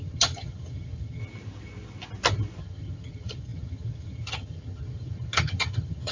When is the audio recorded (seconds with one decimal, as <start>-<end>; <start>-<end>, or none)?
1.2-2.6